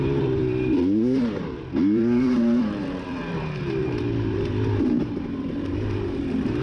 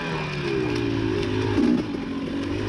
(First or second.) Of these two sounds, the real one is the second